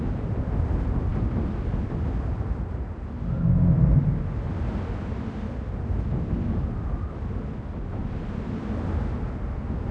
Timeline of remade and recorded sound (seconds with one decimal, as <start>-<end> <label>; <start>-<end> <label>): 0.0-9.9 recorded